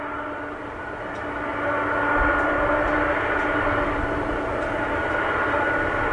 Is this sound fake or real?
real